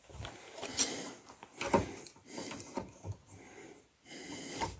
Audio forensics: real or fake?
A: real